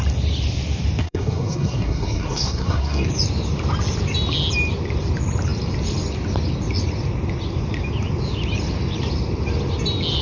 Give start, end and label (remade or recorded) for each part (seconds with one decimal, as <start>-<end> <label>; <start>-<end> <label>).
0.0-1.0 recorded; 1.0-3.1 remade; 3.1-10.2 recorded